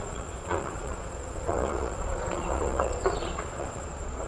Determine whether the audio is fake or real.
fake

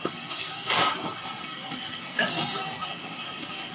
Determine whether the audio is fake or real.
fake